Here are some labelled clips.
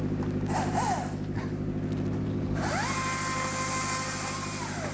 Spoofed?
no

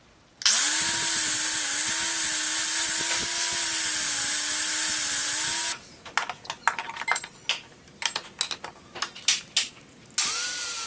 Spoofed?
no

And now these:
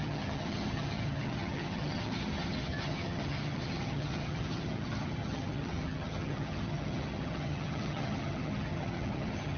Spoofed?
yes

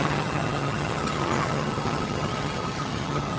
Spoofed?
yes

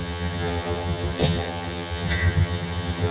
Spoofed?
yes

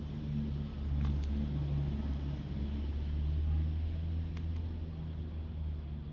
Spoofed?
no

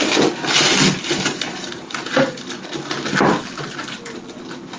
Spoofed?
no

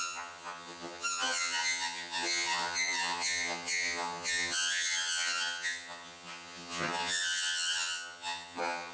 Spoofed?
yes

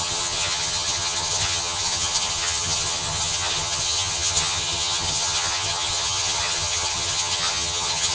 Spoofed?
yes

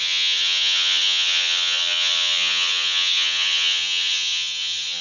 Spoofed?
yes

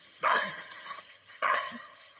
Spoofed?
yes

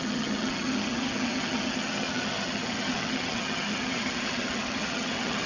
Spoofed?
yes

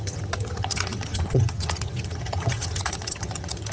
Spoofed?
yes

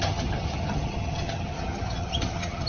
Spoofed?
yes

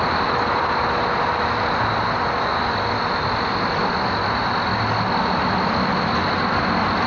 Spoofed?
no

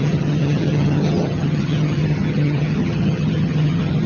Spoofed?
yes